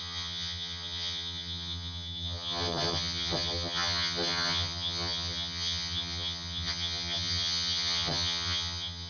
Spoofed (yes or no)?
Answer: yes